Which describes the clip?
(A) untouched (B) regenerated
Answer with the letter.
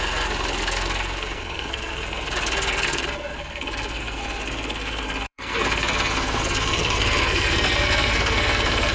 B